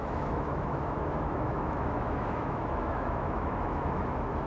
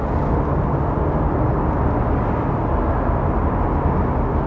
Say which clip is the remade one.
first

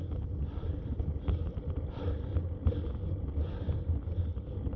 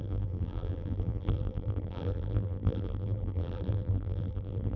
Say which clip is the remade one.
second